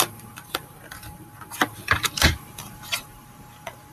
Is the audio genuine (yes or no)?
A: no